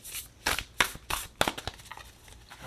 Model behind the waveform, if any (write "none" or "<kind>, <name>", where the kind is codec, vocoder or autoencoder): none